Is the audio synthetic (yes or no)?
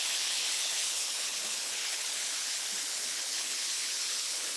yes